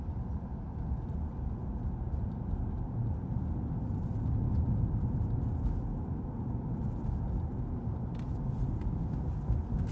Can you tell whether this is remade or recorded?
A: recorded